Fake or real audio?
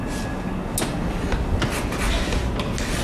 real